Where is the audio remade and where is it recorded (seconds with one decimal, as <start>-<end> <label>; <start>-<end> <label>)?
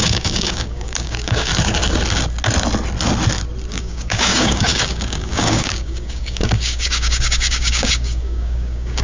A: 0.0-1.5 remade; 1.5-3.7 recorded; 3.7-9.0 remade